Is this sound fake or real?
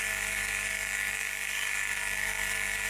fake